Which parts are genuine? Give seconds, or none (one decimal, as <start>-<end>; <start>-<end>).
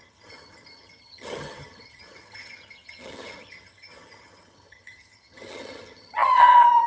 none